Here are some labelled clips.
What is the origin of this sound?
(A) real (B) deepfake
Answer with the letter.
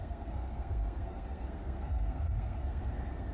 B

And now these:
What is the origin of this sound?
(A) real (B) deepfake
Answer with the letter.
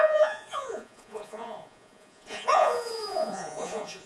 B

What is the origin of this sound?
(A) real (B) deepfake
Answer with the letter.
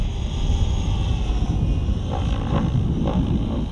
A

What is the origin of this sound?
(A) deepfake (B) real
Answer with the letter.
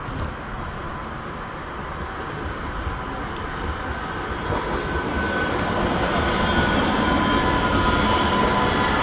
B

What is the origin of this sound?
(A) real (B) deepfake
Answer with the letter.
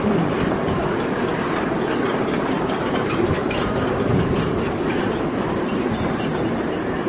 B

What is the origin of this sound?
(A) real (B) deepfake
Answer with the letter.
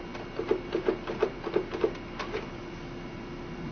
B